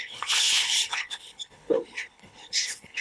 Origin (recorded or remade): remade